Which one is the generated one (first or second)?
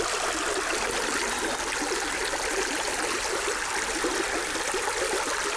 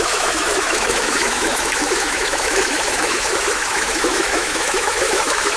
second